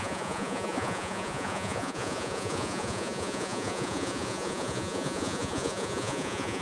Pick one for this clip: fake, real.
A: fake